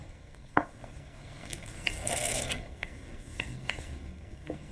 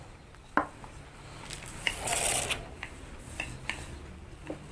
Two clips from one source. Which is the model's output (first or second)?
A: first